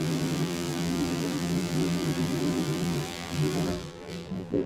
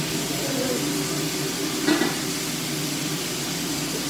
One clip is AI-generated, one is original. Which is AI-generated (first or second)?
first